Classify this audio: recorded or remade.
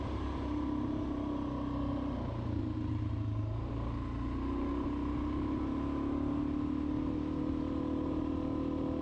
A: recorded